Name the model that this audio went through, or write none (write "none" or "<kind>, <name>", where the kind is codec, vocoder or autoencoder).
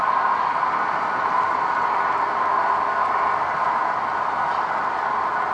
none